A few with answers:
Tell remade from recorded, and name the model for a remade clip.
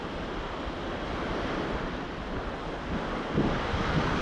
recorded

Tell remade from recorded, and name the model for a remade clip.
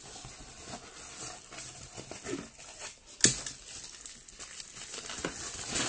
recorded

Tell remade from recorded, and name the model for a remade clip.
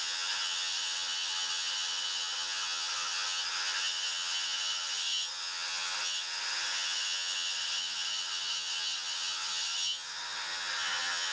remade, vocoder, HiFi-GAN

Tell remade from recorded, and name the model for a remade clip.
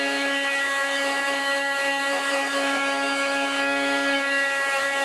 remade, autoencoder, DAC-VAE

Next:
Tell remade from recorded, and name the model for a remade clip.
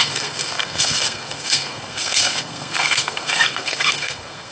remade, codec, SNAC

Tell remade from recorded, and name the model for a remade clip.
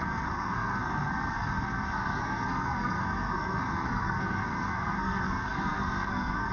remade, codec, SNAC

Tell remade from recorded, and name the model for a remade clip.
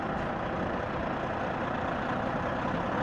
recorded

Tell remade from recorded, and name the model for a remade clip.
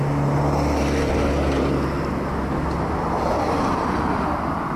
recorded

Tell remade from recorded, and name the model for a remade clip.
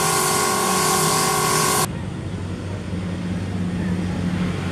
recorded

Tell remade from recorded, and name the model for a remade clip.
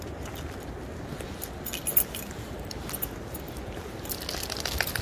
recorded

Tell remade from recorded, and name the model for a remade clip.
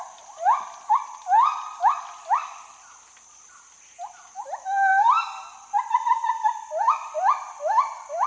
recorded